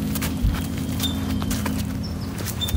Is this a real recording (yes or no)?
no